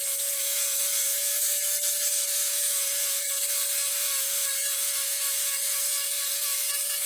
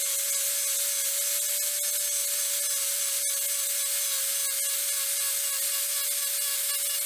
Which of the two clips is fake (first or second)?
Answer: first